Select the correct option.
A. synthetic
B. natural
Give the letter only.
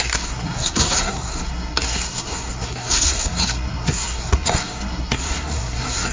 A